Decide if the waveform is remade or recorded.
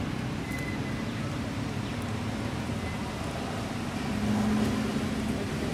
recorded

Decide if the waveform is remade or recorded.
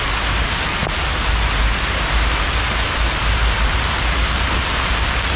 recorded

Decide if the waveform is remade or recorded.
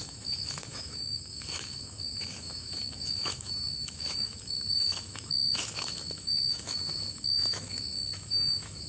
remade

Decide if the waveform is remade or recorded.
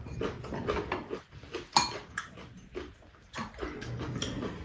recorded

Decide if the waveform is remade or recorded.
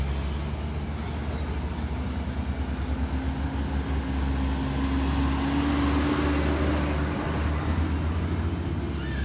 recorded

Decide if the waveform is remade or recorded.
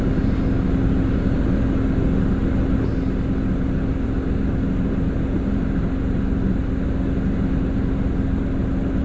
recorded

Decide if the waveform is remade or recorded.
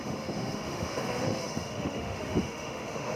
remade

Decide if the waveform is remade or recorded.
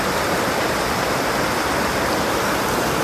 recorded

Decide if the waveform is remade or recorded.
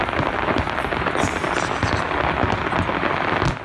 recorded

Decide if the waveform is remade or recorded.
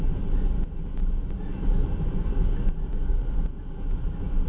recorded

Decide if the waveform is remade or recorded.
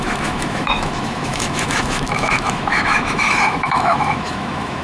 remade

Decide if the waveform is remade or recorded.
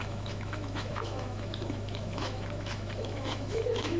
remade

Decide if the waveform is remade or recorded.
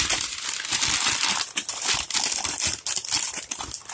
recorded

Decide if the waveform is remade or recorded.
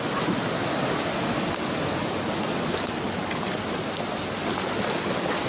recorded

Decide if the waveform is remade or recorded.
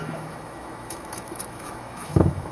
remade